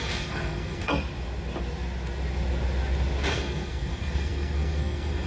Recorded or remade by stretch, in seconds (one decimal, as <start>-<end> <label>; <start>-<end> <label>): 0.0-0.9 remade; 0.9-3.3 recorded; 3.3-5.3 remade